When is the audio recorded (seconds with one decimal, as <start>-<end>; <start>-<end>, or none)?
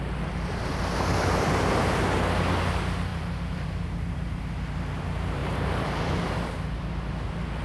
0.0-3.1; 4.4-5.4; 6.1-7.6